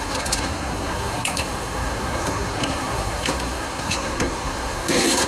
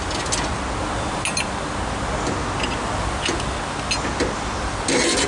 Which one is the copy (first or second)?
first